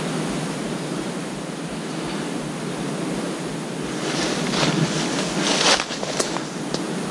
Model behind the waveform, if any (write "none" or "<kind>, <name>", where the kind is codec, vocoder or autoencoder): none